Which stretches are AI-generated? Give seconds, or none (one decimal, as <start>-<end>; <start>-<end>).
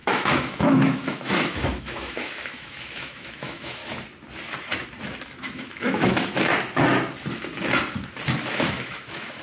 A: 0.0-3.8; 5.4-6.5; 8.5-9.4